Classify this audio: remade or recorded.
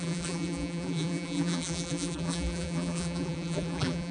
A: remade